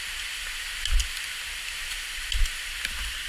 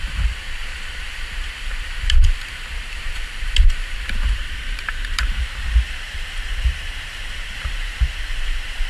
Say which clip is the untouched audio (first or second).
first